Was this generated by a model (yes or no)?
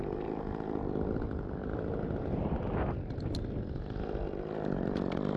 no